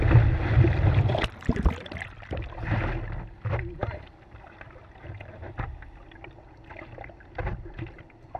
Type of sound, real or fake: real